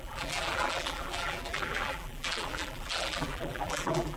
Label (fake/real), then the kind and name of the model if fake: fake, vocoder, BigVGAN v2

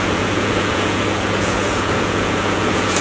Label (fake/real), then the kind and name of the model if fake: fake, vocoder, Vocos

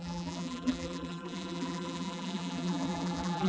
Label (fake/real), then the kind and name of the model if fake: fake, vocoder, BigVGAN v2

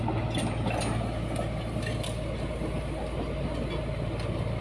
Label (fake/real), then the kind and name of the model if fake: real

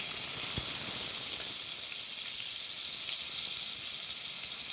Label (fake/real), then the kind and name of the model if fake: real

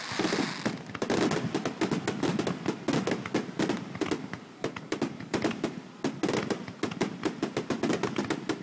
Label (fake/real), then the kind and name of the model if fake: real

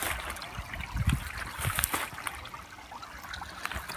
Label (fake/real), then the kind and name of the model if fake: real